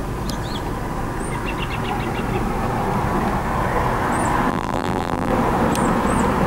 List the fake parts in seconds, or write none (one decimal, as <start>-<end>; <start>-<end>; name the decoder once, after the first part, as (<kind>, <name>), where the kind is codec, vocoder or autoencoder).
4.5-5.3 (vocoder, BigVGAN v2)